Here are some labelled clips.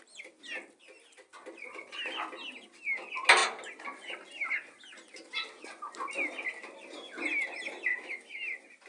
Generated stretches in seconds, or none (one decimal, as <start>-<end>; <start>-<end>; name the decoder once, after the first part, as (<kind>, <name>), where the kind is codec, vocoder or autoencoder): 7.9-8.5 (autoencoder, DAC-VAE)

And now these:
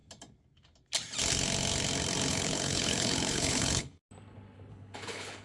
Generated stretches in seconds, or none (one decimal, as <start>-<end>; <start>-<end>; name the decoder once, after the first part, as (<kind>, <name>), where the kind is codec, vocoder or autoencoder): 2.3-4.0 (codec, HILCodec); 4.7-5.4

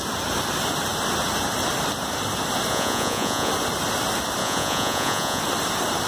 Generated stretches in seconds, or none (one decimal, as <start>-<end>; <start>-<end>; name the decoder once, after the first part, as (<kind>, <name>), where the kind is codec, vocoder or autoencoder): 2.7-3.5 (vocoder, Vocos); 4.4-5.4

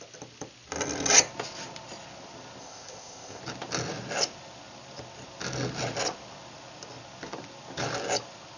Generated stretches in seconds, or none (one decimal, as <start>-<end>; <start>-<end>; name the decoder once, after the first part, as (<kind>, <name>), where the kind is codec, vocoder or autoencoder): 2.6-3.4 (codec, ZipCodec)